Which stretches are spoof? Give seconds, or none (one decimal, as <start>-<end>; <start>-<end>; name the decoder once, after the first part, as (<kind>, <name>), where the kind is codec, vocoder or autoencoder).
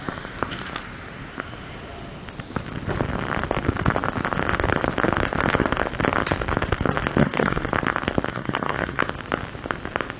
7.2-7.7 (codec, SNAC); 8.3-9.0